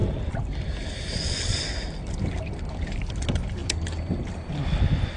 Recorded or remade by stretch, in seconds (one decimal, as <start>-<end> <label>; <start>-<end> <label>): 0.0-5.2 recorded